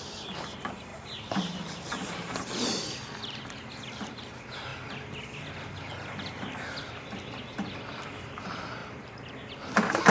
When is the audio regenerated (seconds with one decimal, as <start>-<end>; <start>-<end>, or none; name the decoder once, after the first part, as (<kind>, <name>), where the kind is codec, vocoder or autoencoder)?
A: 0.9-2.3 (vocoder, BigVGAN v2); 8.8-9.5